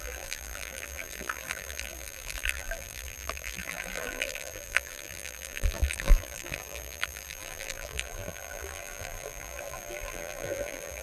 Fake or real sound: fake